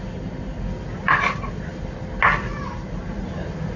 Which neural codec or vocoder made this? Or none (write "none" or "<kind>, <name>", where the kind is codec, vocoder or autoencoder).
none